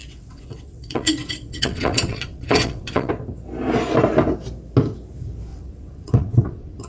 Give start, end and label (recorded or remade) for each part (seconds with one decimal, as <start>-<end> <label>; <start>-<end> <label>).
0.0-3.1 remade; 3.1-5.5 recorded; 5.5-6.9 remade